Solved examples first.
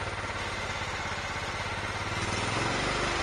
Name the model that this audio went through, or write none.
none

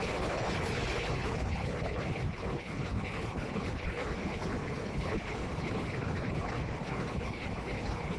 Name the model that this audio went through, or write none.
codec, HILCodec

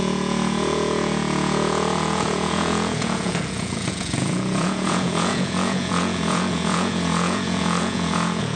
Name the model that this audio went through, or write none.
vocoder, Vocos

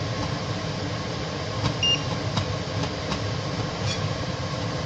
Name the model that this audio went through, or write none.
none